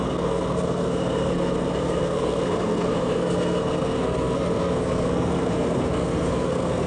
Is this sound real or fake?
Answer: fake